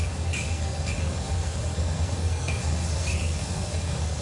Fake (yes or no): yes